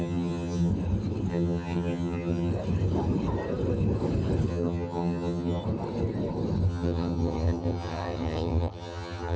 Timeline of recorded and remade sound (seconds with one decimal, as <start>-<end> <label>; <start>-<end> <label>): 0.0-0.7 remade; 0.7-1.3 recorded; 1.3-2.5 remade; 2.5-4.5 recorded; 4.5-5.6 remade; 5.6-6.7 recorded; 6.7-9.4 remade